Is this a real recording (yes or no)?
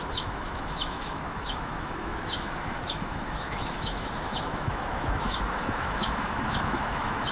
no